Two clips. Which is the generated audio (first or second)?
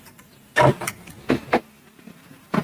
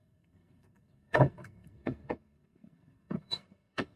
second